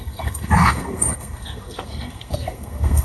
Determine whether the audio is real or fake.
fake